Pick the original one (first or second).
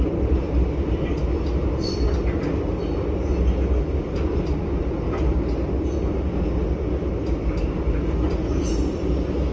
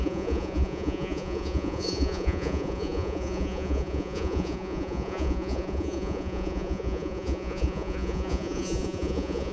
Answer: first